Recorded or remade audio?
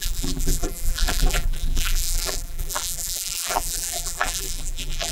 remade